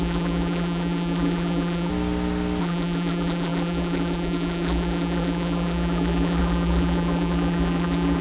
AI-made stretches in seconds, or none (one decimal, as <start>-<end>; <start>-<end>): 0.0-1.9; 2.6-8.2